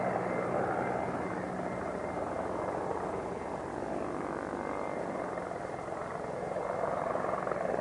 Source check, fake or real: real